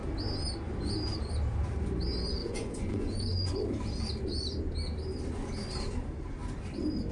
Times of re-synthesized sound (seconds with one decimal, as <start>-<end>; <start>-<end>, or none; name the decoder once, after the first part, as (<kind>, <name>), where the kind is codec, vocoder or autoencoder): 2.4-3.5 (vocoder, Vocos)